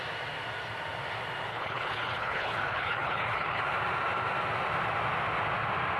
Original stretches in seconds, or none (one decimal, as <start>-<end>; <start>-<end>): 0.0-1.5; 3.6-6.0